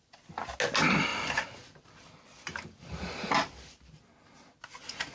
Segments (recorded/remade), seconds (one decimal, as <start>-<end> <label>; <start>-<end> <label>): 0.0-1.1 recorded; 1.1-4.1 remade; 4.1-5.1 recorded